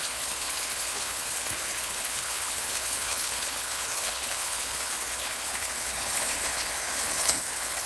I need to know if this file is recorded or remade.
remade